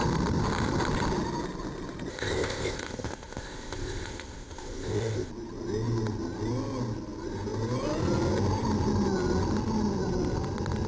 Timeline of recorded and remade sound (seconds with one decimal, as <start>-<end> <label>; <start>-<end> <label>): 0.0-2.1 recorded; 2.1-5.3 remade; 5.3-10.9 recorded